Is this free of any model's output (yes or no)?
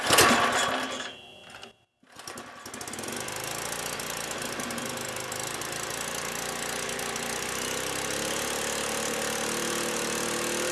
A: yes